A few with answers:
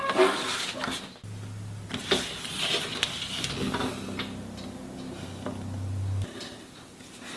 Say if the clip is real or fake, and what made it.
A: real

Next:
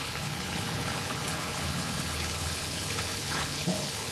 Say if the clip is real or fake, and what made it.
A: fake, codec, HILCodec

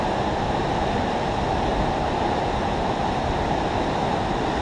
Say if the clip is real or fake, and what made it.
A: real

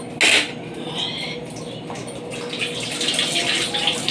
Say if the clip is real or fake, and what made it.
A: real